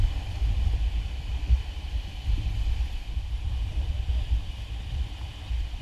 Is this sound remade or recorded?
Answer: remade